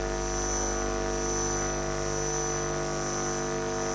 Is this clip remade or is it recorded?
recorded